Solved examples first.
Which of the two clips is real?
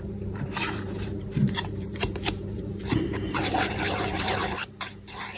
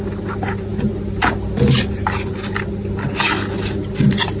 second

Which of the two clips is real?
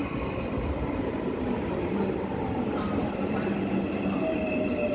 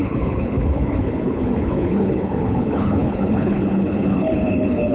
first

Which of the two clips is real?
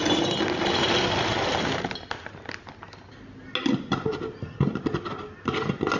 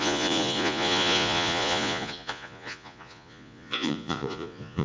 first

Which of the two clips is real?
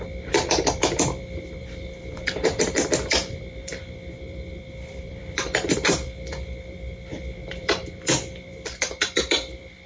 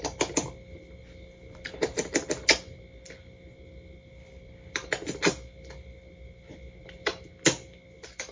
second